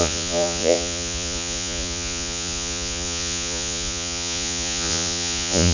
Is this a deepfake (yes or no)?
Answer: yes